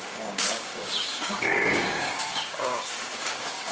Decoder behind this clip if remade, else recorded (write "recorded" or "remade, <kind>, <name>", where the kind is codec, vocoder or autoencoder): remade, codec, DAC